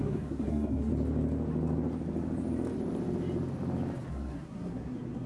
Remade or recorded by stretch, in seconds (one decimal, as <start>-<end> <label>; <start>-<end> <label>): 0.0-0.9 remade; 0.9-4.1 recorded; 4.1-5.3 remade

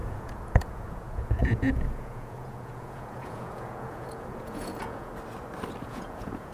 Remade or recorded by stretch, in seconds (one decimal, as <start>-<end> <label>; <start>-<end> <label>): 0.0-5.1 remade; 5.1-5.8 recorded; 5.8-6.5 remade

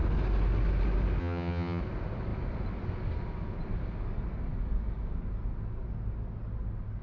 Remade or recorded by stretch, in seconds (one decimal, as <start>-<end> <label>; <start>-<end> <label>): 0.0-1.2 recorded; 1.2-1.8 remade; 1.8-7.0 recorded